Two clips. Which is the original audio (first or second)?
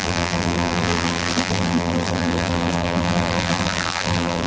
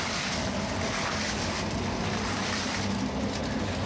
second